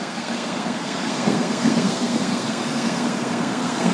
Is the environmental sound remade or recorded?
remade